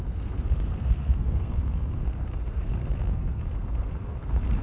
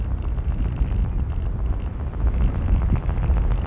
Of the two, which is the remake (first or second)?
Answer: first